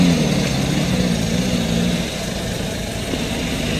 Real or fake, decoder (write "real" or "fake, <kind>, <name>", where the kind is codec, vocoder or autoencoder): real